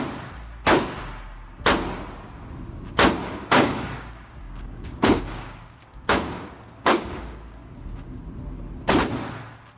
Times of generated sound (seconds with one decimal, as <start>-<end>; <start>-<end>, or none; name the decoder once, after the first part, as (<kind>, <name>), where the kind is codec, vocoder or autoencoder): 3.2-8.2 (codec, DAC)